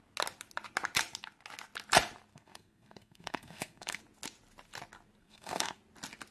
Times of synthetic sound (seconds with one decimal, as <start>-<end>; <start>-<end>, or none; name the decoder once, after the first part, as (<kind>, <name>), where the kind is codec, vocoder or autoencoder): 2.3-4.0 (codec, SNAC); 5.2-5.8